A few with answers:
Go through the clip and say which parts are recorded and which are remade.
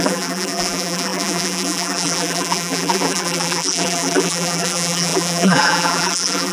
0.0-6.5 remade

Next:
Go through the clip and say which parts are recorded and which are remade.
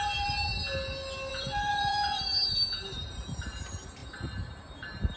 0.0-0.5 remade; 0.5-1.3 recorded; 1.3-5.2 remade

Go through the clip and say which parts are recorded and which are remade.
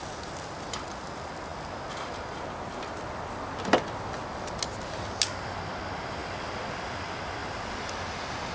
0.0-8.5 recorded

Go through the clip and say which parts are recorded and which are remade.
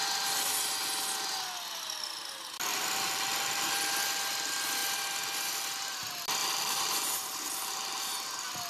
0.0-2.7 recorded; 2.7-3.7 remade; 3.7-6.4 recorded; 6.4-8.1 remade; 8.1-8.7 recorded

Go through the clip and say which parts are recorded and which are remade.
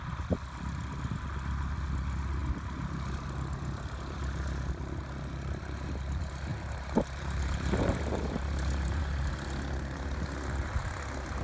0.0-6.5 recorded; 6.5-9.0 remade; 9.0-11.4 recorded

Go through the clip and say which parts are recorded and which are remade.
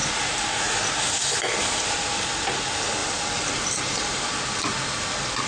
0.0-0.6 remade; 0.6-3.0 recorded; 3.0-4.2 remade; 4.2-5.5 recorded